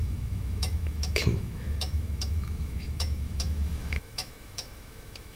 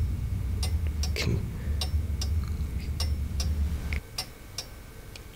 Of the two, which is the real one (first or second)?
second